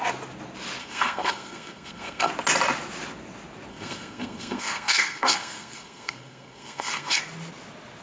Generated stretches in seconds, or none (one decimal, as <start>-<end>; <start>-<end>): 0.8-2.3; 3.7-7.2